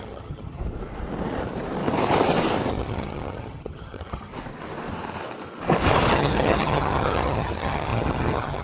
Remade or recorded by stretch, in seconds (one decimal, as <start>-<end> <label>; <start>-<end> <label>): 0.0-0.6 remade; 0.6-2.7 recorded; 2.7-4.3 remade; 4.3-6.1 recorded; 6.1-8.6 remade